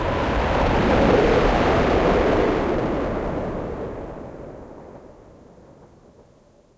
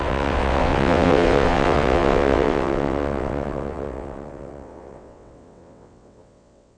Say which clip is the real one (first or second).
first